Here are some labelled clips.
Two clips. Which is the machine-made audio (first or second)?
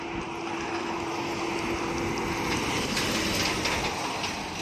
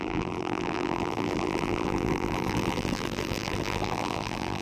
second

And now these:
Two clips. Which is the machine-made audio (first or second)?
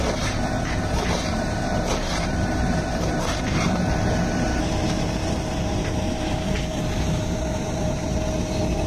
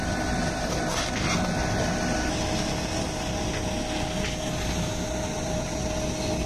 first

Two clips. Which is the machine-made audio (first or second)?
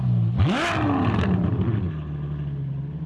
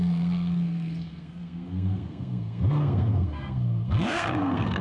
second